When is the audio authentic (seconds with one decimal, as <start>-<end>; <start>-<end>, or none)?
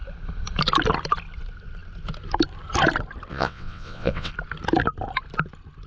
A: 0.0-3.3; 4.3-5.9